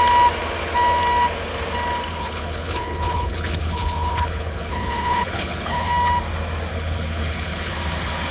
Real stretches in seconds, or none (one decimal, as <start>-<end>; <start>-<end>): 0.0-2.1; 5.9-6.7; 7.7-8.3